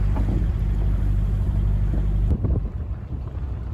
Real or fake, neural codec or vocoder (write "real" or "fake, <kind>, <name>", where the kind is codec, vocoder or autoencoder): fake, vocoder, BigVGAN v2